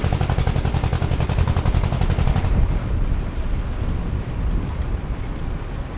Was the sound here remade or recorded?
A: recorded